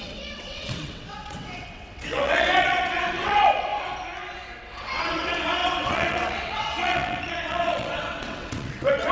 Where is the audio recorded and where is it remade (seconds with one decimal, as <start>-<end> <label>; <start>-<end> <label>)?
0.0-3.7 remade; 3.7-4.6 recorded; 4.6-9.1 remade